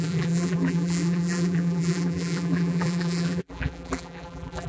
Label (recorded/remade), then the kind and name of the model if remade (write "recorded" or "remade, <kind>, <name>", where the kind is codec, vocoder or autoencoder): remade, vocoder, BigVGAN v2